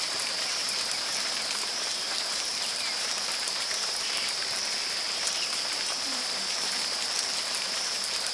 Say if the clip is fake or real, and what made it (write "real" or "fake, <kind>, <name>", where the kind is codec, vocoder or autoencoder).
fake, vocoder, BigVGAN v2